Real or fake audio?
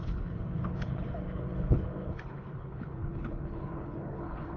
fake